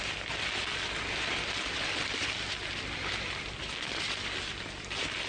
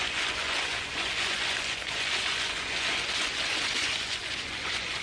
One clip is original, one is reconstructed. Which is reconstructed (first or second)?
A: second